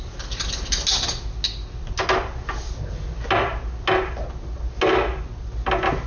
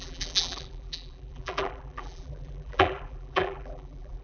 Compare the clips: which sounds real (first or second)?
first